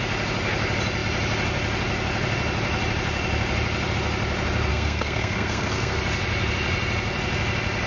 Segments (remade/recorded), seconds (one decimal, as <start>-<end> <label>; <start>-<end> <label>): 0.0-4.7 recorded; 4.7-6.0 remade; 6.0-7.9 recorded